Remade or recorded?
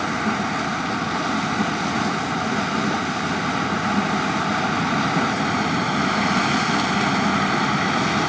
recorded